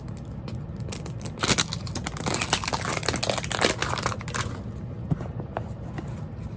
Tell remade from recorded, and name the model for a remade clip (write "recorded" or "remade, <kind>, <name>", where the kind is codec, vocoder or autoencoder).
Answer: recorded